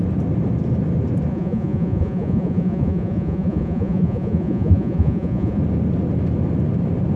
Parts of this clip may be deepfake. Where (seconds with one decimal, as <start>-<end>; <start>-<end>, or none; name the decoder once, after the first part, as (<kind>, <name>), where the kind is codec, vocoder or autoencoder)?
1.3-5.6 (vocoder, Vocos)